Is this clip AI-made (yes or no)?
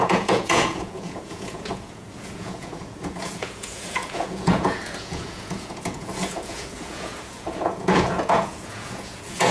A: yes